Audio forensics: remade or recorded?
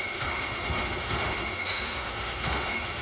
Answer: remade